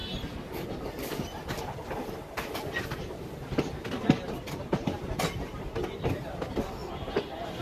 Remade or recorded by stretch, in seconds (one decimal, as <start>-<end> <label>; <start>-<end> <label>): 0.0-7.6 recorded

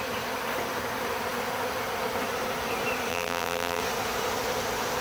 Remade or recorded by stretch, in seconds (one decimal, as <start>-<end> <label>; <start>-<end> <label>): 0.0-3.1 recorded; 3.1-3.8 remade; 3.8-5.0 recorded